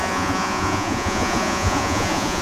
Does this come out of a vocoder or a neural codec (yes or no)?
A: yes